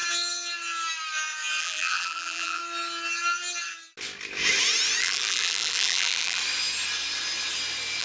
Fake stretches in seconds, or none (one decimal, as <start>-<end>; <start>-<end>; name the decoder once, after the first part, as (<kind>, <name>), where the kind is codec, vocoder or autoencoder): 1.6-2.6 (vocoder, BigVGAN v2); 5.0-6.4